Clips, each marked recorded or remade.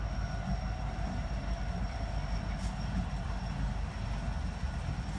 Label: recorded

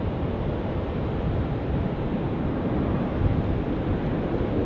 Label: recorded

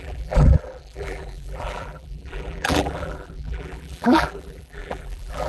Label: remade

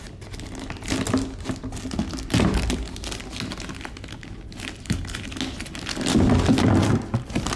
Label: recorded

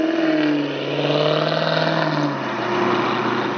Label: recorded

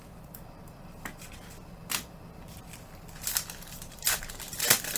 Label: remade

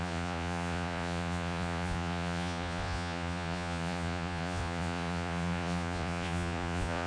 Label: remade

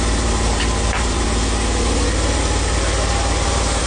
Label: recorded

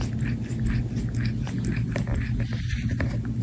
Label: recorded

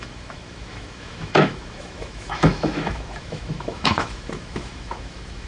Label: remade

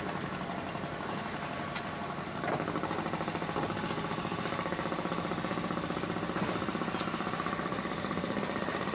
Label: recorded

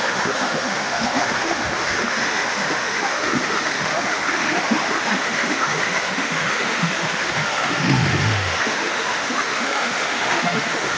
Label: remade